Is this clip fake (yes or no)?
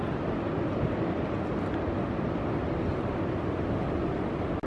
no